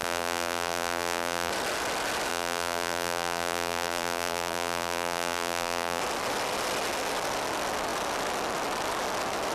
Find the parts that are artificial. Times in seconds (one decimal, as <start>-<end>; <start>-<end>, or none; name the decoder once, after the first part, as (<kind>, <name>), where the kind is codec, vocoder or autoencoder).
0.0-1.5 (vocoder, BigVGAN v2); 2.3-6.0